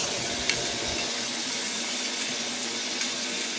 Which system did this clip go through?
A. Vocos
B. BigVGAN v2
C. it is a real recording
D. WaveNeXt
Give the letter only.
A